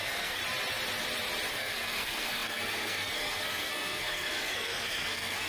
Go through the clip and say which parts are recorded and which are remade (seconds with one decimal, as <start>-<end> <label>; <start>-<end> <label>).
0.0-0.4 remade; 0.4-1.5 recorded; 1.5-5.5 remade